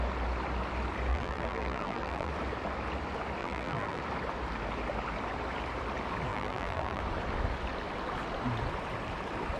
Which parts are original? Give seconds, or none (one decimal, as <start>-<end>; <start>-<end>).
0.0-1.1; 2.3-3.4; 4.0-6.3; 7.0-9.6